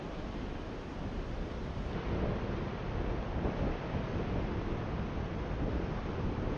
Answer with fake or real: real